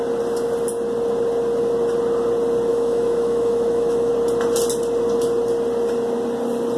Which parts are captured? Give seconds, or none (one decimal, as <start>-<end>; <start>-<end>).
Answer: 0.0-2.7; 4.1-6.8